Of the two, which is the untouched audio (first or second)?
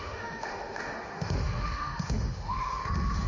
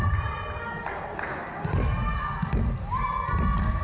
second